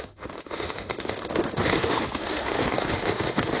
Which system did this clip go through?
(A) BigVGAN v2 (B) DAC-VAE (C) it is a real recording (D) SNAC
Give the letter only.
B